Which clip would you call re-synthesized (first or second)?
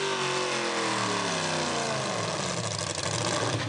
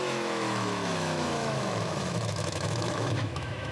second